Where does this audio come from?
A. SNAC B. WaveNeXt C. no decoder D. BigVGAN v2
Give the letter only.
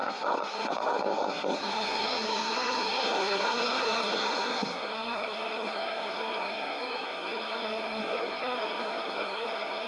A